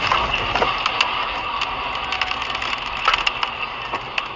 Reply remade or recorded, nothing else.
recorded